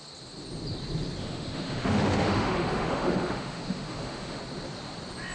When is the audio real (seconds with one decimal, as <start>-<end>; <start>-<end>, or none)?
0.0-1.2; 4.4-5.3